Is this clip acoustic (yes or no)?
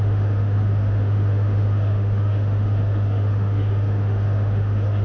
no